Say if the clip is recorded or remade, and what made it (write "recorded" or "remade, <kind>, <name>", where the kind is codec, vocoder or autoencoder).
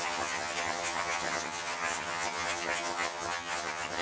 remade, vocoder, HiFi-GAN